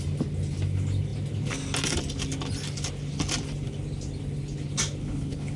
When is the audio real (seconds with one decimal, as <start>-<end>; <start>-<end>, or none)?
0.0-5.0